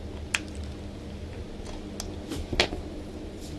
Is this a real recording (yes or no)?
yes